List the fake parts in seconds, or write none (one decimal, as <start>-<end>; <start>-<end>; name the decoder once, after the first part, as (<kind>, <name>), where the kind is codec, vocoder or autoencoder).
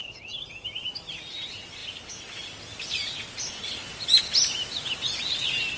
none